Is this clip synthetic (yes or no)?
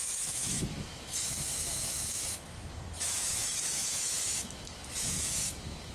yes